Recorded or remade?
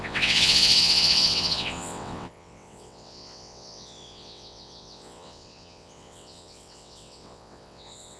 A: remade